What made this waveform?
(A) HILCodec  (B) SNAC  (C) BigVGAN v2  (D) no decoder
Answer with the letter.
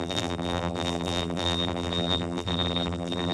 C